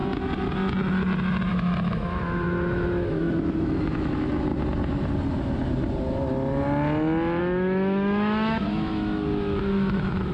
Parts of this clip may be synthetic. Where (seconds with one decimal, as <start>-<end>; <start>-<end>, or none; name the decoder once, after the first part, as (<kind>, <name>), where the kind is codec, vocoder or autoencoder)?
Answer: 1.5-4.5 (autoencoder, DAC-VAE); 7.4-10.3